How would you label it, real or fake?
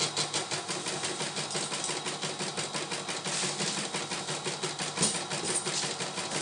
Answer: real